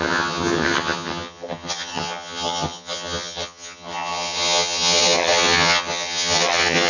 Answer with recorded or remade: remade